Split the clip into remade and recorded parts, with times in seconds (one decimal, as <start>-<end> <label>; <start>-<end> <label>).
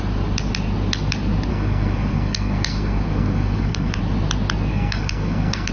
0.0-1.5 recorded; 1.5-4.0 remade; 4.0-4.7 recorded; 4.7-5.7 remade